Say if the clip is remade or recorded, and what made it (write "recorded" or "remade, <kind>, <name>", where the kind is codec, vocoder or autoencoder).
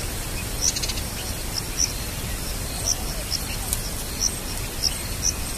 recorded